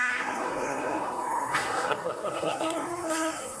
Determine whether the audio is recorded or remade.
remade